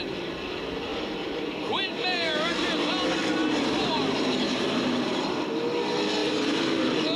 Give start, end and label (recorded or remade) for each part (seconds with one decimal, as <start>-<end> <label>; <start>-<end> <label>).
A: 0.0-0.9 recorded; 0.9-2.7 remade; 2.7-3.4 recorded; 3.4-5.5 remade; 5.5-6.2 recorded; 6.2-7.2 remade